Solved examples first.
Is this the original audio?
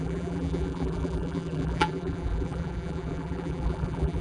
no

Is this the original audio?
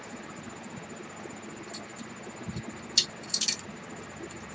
yes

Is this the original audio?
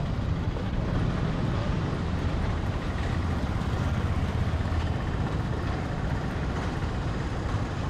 no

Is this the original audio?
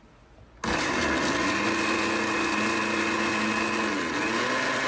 yes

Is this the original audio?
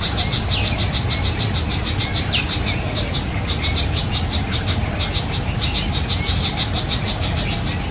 yes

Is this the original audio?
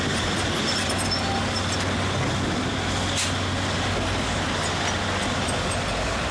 yes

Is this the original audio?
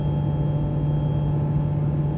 yes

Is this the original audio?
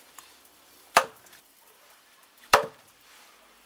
no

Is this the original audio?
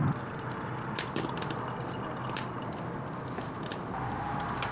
no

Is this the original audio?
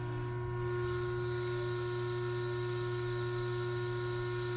yes